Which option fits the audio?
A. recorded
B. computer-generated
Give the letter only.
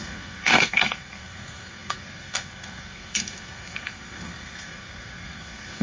B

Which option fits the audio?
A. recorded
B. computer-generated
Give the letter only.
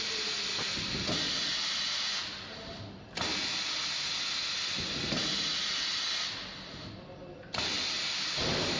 A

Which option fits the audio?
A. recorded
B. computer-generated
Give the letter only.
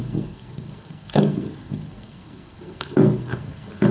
B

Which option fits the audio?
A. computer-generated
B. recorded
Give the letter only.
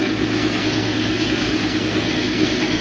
A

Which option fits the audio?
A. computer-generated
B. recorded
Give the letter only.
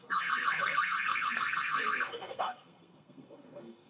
A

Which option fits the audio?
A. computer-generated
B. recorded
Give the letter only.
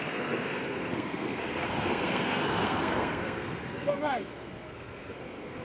A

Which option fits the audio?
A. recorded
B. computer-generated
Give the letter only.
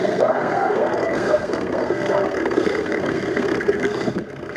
B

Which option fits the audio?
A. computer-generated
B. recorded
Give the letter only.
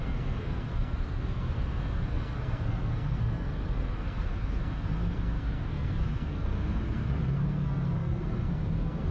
A